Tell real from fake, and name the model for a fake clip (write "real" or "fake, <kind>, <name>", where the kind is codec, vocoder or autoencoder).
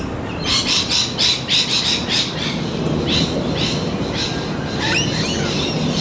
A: real